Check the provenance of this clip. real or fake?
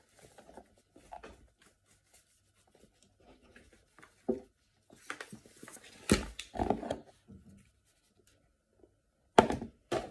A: real